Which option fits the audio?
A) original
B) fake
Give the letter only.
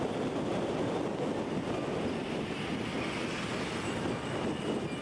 A